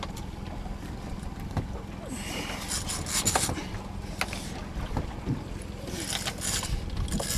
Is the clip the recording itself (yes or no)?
yes